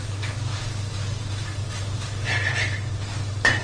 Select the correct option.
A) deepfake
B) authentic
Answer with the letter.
B